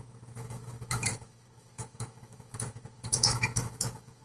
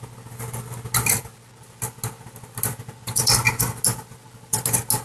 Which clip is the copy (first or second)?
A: first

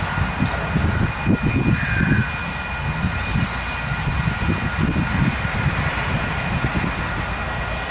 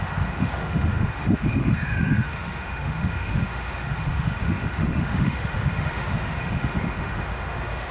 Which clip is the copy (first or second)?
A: second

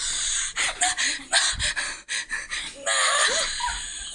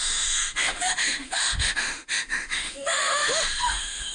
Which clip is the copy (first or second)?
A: second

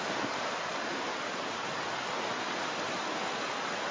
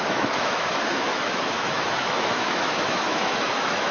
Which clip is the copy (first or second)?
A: second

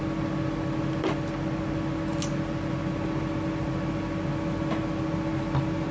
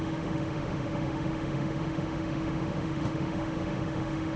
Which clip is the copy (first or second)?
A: second